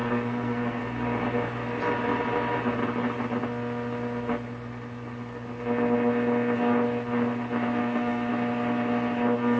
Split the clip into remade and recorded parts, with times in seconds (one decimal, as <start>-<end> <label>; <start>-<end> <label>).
0.0-0.8 remade; 0.8-7.8 recorded; 7.8-8.3 remade; 8.3-9.6 recorded